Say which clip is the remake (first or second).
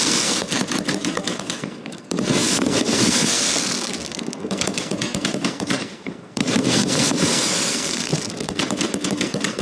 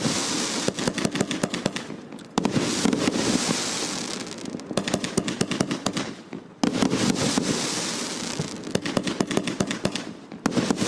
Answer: first